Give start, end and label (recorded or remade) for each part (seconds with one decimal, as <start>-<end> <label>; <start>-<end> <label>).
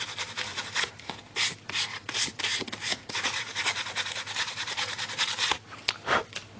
0.0-0.5 recorded; 0.5-1.1 remade; 1.1-1.9 recorded; 1.9-2.4 remade; 2.4-2.9 recorded; 2.9-5.2 remade; 5.2-6.6 recorded